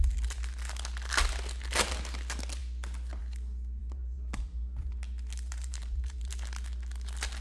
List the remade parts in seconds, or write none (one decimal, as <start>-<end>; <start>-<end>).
3.8-4.4; 5.5-6.3